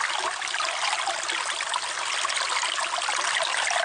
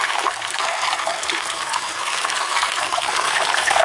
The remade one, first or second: second